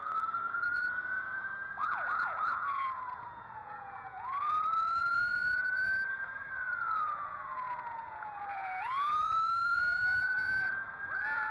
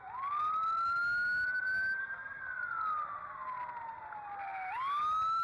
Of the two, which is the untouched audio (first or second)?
second